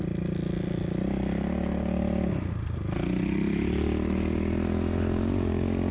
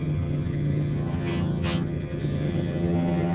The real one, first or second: first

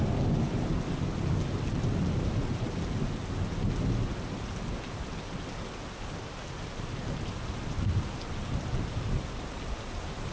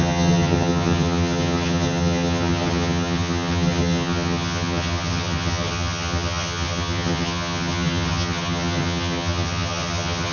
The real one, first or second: first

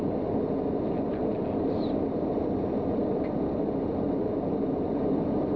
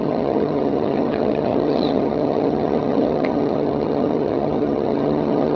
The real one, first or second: first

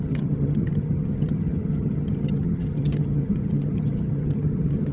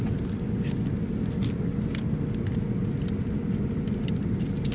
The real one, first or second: second